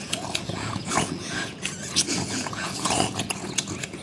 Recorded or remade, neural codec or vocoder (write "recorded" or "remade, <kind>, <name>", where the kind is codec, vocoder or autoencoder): remade, vocoder, Vocos